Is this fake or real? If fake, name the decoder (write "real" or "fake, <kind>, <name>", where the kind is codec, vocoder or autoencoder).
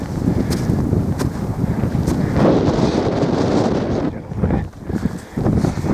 real